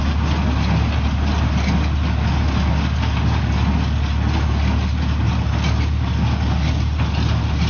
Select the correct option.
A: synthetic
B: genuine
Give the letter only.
B